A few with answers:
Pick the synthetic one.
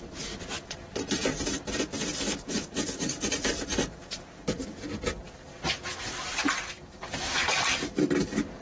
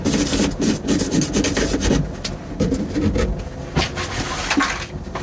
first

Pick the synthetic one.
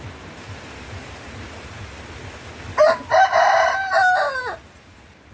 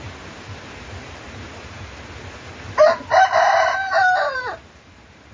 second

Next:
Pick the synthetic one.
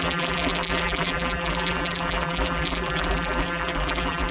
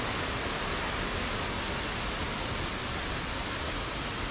first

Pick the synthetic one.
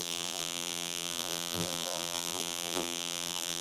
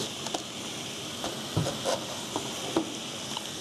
first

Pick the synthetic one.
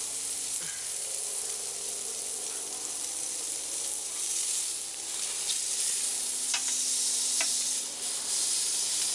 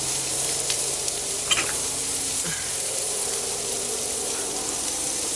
second